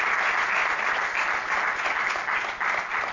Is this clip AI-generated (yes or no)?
no